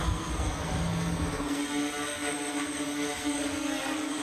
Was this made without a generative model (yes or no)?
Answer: no